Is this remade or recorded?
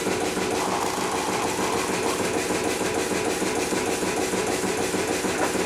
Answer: recorded